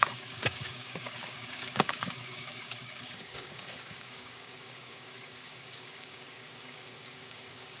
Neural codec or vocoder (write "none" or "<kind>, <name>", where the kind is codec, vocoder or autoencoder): codec, DAC